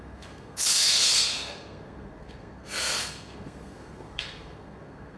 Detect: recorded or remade remade